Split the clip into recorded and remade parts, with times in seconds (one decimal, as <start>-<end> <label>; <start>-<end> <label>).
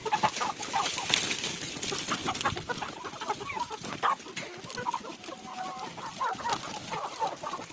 0.0-5.5 remade; 5.5-6.7 recorded; 6.7-7.7 remade